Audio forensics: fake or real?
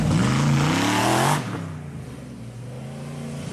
real